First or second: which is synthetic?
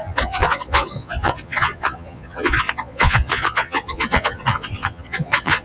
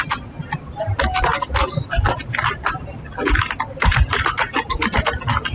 first